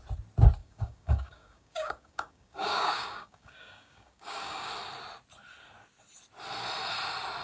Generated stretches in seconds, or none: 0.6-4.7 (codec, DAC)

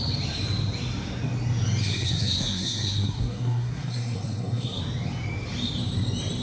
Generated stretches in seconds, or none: 1.8-4.8 (codec, SNAC)

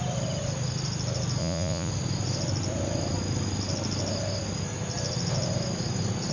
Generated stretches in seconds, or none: 1.4-1.9 (vocoder, Vocos)

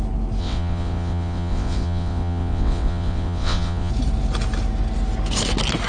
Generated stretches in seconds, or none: 0.4-3.9 (vocoder, WaveNeXt)

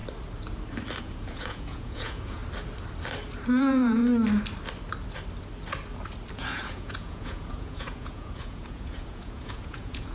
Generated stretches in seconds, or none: 1.0-2.4 (vocoder, Vocos); 3.6-4.0; 6.3-10.1

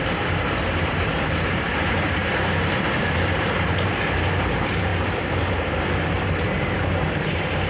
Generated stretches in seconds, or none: 0.0-2.2 (vocoder, BigVGAN v2); 3.0-4.9; 5.5-7.7